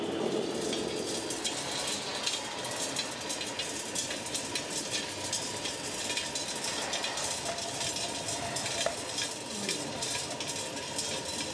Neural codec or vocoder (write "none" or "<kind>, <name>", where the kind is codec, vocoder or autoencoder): none